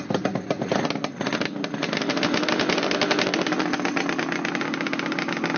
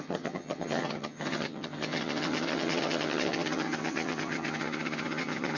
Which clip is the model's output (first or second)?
second